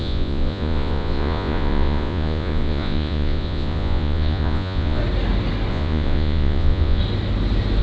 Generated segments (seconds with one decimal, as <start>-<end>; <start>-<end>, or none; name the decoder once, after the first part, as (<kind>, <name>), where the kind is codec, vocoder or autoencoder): 0.0-5.0 (vocoder, Vocos); 5.7-7.0